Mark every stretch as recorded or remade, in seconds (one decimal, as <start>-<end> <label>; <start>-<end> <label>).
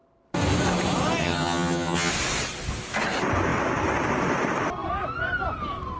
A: 0.0-1.2 recorded; 1.2-2.1 remade; 2.1-6.0 recorded